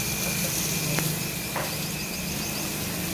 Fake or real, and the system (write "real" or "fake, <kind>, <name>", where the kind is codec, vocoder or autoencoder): real